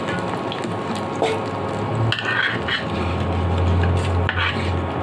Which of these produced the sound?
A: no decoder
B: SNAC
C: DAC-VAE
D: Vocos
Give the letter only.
A